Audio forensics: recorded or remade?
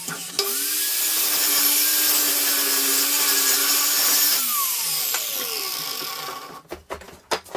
recorded